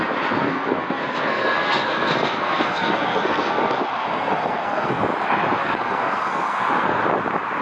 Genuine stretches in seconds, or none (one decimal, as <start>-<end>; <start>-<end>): 0.0-0.4; 5.0-5.6; 7.0-7.6